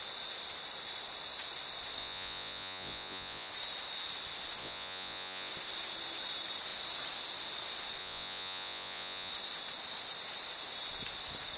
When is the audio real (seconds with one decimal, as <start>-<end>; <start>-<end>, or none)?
0.0-2.0; 3.5-4.6; 5.5-8.0; 9.3-11.6